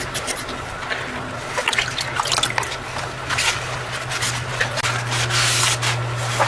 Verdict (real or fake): real